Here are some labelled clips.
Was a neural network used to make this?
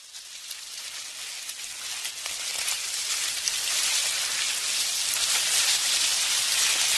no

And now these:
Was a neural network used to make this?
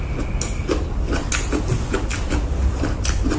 no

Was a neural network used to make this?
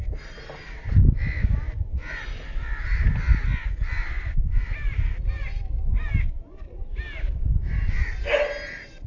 no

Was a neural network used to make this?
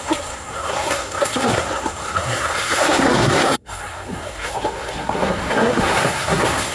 yes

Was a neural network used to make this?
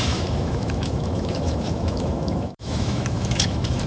yes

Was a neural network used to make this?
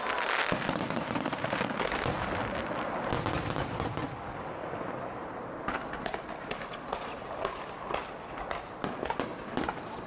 no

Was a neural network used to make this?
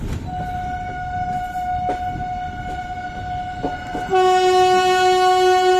no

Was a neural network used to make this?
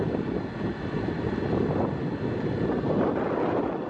no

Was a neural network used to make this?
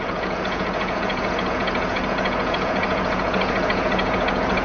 yes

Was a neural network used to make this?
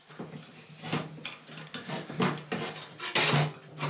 no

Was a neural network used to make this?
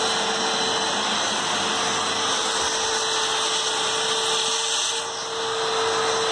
no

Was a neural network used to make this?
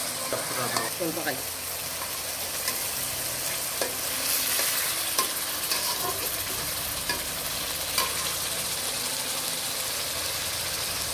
no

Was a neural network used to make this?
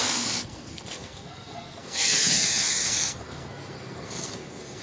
yes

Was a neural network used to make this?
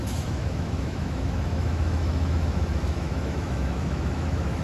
yes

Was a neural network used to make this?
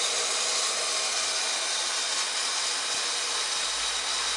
no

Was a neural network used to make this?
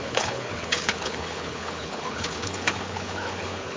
yes